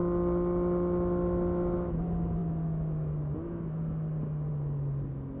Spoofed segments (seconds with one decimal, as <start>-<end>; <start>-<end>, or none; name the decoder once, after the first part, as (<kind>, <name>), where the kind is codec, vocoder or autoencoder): none